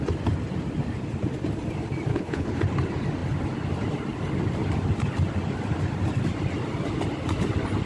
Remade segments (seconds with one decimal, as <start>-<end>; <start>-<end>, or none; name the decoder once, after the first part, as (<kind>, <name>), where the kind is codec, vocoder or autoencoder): 2.1-2.6 (codec, HILCodec)

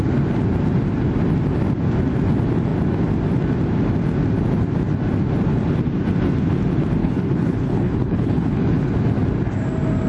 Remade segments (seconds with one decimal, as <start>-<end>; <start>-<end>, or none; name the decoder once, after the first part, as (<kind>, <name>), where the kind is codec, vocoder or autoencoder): 7.0-8.9 (codec, HILCodec)

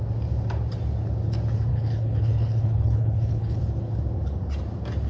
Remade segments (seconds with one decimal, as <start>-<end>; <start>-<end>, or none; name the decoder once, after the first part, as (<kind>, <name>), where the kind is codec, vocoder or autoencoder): 1.7-3.6 (codec, HILCodec)

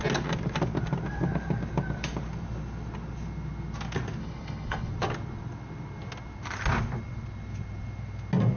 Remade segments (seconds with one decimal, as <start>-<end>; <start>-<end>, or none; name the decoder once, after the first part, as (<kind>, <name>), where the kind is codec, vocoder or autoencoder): 4.2-4.9 (codec, HILCodec)

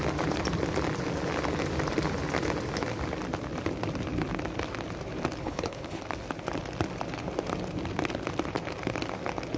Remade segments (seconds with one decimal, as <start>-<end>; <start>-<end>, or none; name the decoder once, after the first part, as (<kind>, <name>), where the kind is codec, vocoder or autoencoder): 5.4-6.0 (codec, HILCodec)

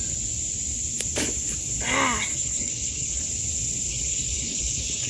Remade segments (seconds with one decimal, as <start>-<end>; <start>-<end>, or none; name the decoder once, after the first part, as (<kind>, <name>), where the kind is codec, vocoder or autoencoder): 2.3-3.2 (codec, HILCodec); 3.9-5.1

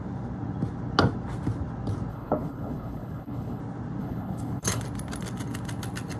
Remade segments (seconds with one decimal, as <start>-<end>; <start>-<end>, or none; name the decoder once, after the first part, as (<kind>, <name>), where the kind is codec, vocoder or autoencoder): 2.1-3.6 (codec, HILCodec); 4.0-4.8

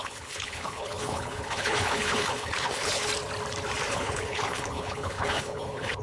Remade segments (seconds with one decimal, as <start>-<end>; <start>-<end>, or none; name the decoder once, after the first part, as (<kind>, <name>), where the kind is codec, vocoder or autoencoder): 0.0-3.1 (codec, HILCodec); 3.9-6.0